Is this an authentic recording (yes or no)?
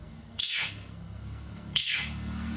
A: no